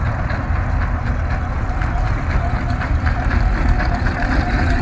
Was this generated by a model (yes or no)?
no